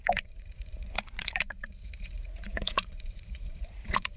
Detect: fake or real fake